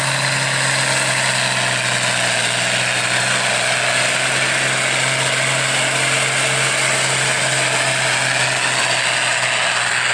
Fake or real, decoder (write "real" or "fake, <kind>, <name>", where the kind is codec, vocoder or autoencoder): real